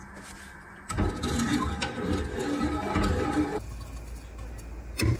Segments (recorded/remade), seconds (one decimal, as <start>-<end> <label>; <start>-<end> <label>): 0.0-5.2 recorded